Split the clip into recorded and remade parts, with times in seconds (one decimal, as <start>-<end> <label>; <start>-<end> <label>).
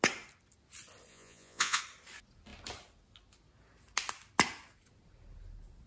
0.0-1.1 recorded; 1.1-1.8 remade; 1.8-5.9 recorded